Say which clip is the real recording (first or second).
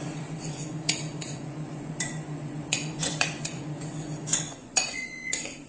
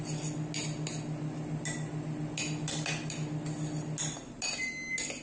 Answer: second